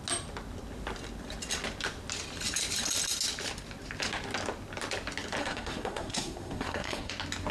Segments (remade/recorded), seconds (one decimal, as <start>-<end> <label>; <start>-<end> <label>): 0.0-5.4 recorded; 5.4-7.1 remade; 7.1-7.5 recorded